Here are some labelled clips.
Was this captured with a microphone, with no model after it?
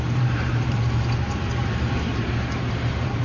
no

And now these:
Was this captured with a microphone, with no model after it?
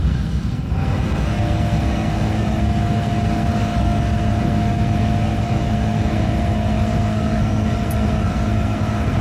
no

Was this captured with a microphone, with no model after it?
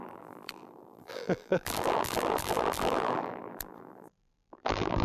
no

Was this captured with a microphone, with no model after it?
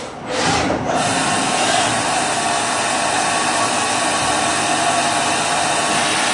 yes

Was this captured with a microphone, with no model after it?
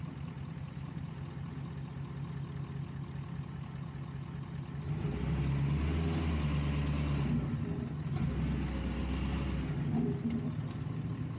yes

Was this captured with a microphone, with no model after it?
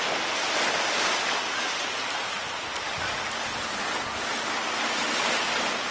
yes